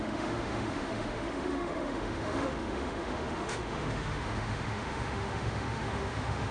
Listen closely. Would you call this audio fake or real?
fake